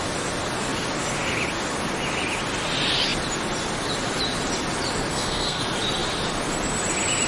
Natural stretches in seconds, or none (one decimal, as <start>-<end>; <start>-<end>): 0.0-5.1; 5.6-7.3